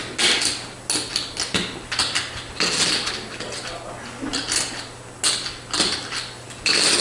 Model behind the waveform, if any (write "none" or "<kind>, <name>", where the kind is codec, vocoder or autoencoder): none